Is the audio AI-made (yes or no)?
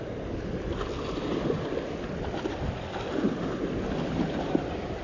no